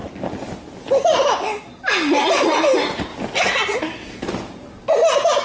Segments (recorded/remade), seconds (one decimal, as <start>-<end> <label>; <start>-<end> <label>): 0.0-5.4 recorded